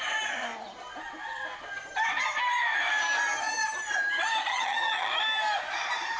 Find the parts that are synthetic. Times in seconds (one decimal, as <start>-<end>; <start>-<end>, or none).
4.5-5.1